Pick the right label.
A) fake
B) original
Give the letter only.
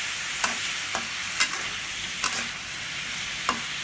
B